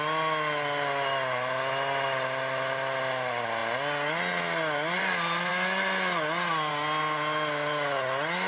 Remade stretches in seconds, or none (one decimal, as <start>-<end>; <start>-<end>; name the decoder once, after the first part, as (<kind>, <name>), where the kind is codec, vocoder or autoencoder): none